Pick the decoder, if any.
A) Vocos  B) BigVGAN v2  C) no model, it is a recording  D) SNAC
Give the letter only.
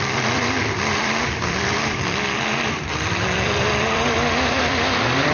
B